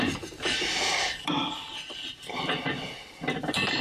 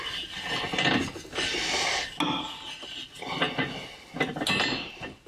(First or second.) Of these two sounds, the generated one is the first